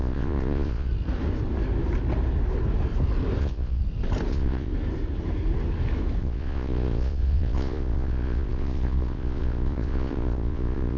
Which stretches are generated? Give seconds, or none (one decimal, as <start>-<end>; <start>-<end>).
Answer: 0.0-0.9; 3.4-3.8; 4.3-4.7; 6.2-11.0